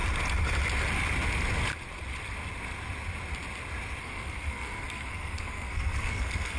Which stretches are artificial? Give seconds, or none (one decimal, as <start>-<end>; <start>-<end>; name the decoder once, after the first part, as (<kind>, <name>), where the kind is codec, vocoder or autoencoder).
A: 4.0-6.6 (codec, SNAC)